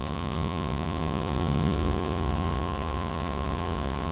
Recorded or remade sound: remade